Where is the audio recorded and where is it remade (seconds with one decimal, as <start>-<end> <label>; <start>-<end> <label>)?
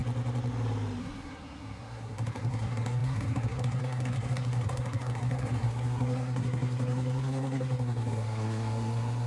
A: 0.0-1.0 recorded; 1.0-9.3 remade